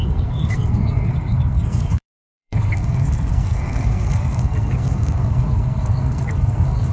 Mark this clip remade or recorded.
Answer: remade